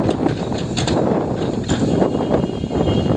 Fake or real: fake